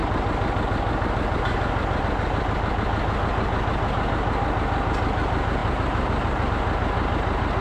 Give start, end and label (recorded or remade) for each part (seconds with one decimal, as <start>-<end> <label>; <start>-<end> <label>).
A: 0.0-7.6 recorded